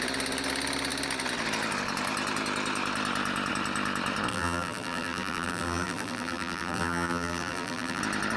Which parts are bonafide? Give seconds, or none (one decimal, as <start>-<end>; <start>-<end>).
0.0-4.3; 8.0-8.4